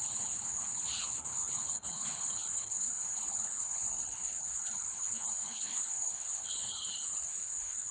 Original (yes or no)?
no